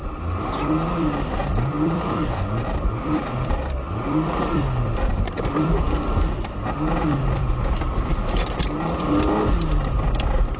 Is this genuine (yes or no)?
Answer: no